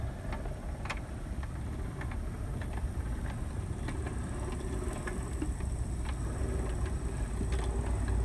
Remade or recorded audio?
recorded